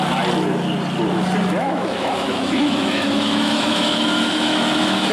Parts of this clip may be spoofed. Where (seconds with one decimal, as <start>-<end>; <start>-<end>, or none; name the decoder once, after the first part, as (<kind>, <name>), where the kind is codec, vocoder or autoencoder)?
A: 1.6-5.1 (autoencoder, DAC-VAE)

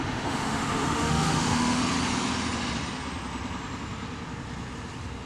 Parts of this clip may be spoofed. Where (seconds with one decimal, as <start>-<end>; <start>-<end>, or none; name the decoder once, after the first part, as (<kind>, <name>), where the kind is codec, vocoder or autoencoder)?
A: 0.0-1.8 (autoencoder, DAC-VAE)

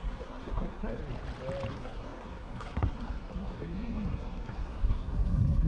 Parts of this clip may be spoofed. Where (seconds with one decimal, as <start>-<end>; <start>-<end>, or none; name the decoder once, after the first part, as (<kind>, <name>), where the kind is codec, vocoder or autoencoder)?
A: 0.0-1.0 (codec, SNAC); 1.7-5.7

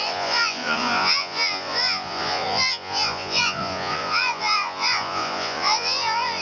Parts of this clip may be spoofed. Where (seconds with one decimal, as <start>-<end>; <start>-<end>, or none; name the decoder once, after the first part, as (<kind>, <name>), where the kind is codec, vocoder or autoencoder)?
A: 0.0-6.4 (vocoder, Vocos)

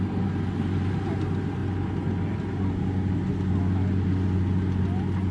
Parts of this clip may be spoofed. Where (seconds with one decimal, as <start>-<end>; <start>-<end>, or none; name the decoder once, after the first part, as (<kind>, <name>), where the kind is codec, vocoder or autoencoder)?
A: none

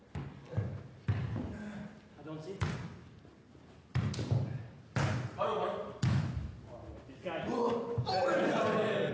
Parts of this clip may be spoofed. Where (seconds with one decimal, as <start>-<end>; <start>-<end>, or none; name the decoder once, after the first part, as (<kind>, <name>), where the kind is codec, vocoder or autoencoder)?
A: none

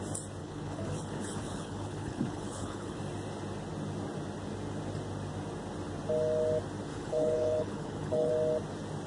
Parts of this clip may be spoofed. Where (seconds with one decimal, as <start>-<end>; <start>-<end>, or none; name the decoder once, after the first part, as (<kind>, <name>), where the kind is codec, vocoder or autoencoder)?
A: 0.4-3.0 (codec, HILCodec); 6.9-8.3